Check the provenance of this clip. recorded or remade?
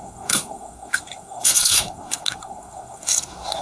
remade